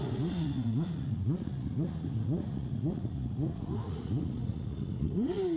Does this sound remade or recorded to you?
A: remade